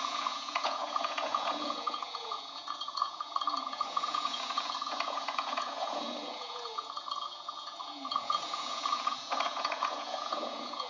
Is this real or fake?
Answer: fake